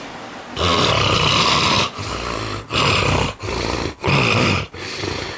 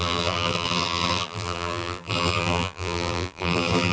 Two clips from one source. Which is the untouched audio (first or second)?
first